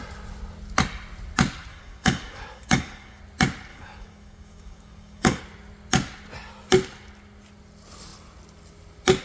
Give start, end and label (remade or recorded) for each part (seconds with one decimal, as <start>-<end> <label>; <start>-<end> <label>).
0.0-1.7 recorded; 1.7-3.2 remade; 3.2-3.7 recorded; 3.7-5.4 remade; 5.4-9.2 recorded